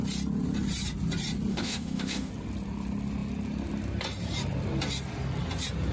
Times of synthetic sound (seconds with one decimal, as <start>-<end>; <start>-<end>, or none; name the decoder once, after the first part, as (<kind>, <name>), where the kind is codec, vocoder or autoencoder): 1.5-2.3 (autoencoder, DAC-VAE)